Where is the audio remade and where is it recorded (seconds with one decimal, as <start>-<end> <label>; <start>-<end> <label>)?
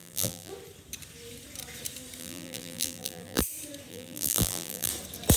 0.0-0.5 remade; 0.5-2.2 recorded; 2.2-3.4 remade; 3.4-3.9 recorded; 3.9-4.9 remade; 4.9-5.4 recorded